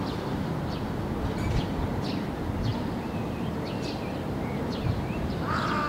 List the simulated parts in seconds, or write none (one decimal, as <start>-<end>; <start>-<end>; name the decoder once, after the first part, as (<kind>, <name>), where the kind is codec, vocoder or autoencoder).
2.7-5.9 (vocoder, BigVGAN v2)